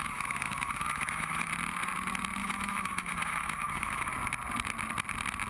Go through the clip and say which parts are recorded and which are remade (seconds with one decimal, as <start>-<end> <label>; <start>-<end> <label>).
0.0-1.5 remade; 1.5-2.4 recorded; 2.4-4.1 remade; 4.1-5.5 recorded